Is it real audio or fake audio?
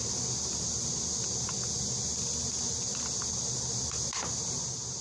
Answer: real